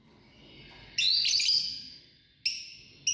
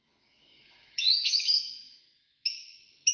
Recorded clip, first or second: first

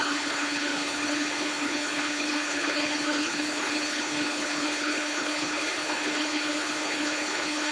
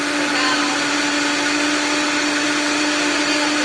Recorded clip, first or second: second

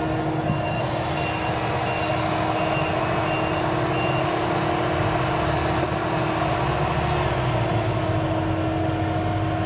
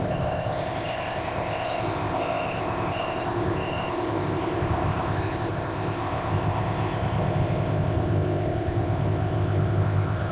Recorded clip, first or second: first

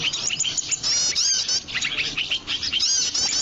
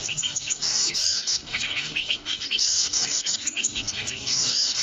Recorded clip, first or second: first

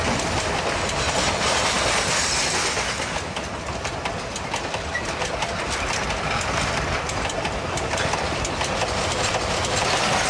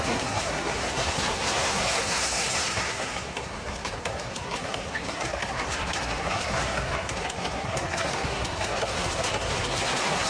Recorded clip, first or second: first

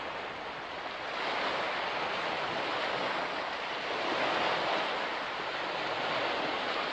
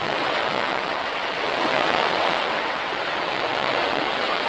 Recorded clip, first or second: first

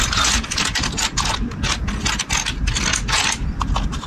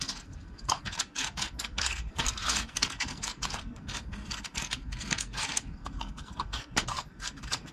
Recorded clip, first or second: first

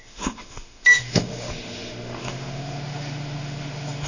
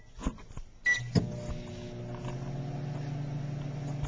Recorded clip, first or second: second